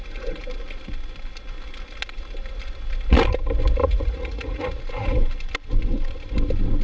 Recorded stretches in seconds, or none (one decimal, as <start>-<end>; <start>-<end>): 0.0-3.8; 4.8-6.8